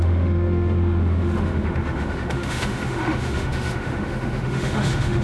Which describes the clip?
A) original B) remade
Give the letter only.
B